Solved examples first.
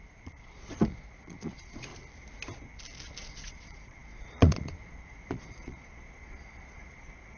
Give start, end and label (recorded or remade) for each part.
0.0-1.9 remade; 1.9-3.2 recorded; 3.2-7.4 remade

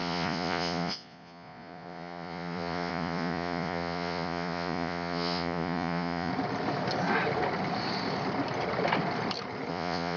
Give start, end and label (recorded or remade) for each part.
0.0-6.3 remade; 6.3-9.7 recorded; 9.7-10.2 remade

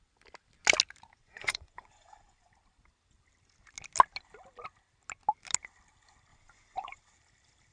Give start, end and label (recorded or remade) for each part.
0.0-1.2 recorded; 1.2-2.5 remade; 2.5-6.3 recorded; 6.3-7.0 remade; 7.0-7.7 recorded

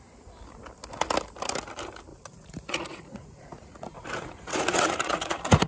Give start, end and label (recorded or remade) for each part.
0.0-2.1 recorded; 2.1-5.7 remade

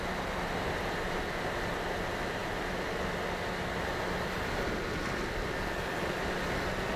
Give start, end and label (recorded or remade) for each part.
0.0-7.0 recorded